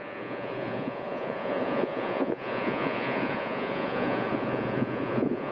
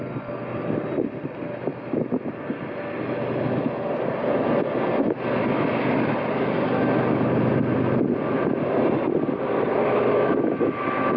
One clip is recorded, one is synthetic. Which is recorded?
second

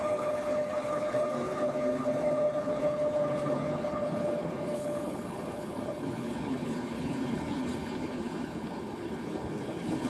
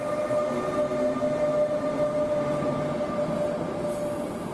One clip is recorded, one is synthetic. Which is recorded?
second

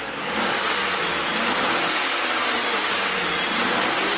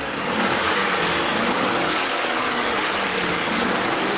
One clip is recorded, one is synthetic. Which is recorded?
first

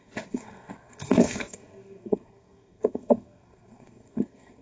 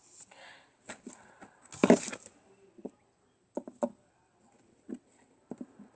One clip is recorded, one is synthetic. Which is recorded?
second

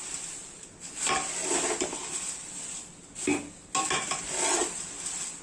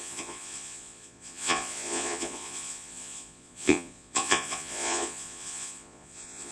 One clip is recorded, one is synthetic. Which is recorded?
first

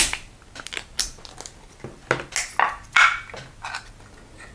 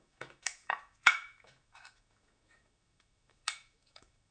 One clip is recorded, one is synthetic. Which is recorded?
first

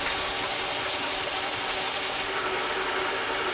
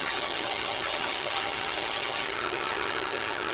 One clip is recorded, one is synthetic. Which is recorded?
first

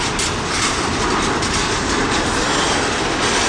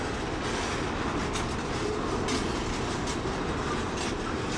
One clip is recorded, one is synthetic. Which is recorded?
second